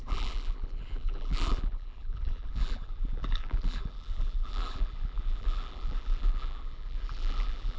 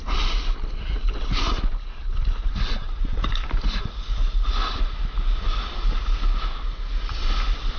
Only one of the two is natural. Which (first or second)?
second